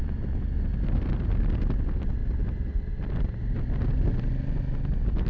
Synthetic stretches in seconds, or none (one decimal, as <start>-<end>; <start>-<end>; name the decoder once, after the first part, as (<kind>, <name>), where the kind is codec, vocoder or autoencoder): none

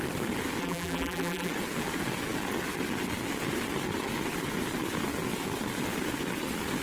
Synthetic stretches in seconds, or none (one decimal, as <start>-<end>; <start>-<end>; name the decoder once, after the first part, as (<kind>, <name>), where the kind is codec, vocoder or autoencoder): 0.6-1.5 (vocoder, BigVGAN v2)

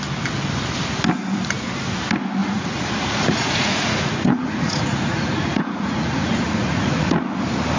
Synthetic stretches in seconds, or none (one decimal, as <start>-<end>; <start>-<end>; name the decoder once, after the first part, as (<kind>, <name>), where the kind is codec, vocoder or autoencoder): 2.4-7.1 (vocoder, Vocos)

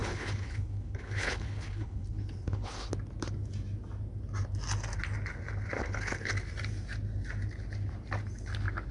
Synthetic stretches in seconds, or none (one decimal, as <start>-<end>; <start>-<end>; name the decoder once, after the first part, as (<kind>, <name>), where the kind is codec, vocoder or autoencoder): 0.0-2.9 (codec, HILCodec); 5.8-6.3

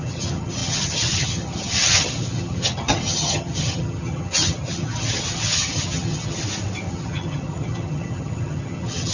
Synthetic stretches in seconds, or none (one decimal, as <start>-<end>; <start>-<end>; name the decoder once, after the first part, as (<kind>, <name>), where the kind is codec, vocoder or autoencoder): 0.0-6.4 (vocoder, HiFi-GAN); 6.9-9.1

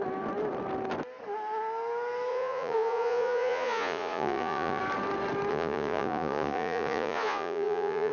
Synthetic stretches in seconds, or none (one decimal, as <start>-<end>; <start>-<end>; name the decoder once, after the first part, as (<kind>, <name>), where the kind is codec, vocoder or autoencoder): 2.3-4.8 (vocoder, Vocos); 5.5-8.1

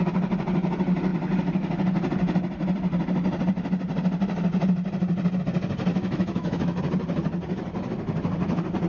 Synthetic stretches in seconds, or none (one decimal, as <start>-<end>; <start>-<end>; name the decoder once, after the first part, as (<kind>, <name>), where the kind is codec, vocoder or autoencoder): 5.9-6.8 (autoencoder, DAC-VAE)

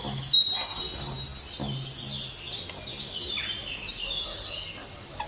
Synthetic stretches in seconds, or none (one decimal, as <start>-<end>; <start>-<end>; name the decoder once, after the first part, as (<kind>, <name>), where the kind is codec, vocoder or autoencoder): none